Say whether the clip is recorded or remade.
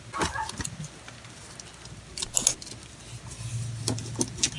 recorded